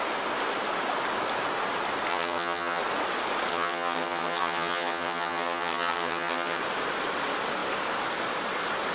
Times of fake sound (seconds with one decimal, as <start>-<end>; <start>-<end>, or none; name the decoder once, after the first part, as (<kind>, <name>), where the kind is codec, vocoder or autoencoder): 2.1-2.8 (vocoder, HiFi-GAN); 3.5-6.6